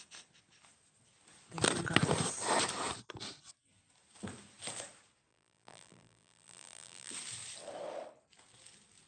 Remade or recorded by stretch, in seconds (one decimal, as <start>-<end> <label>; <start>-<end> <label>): 0.0-5.3 recorded; 5.3-7.1 remade; 7.1-9.1 recorded